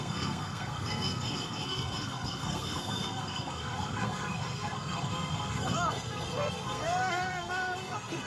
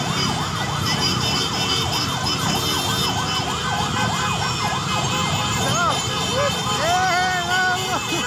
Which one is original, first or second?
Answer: second